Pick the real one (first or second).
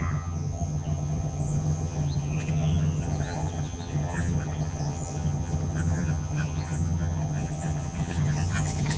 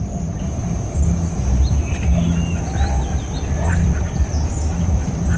second